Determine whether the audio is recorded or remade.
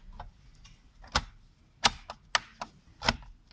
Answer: recorded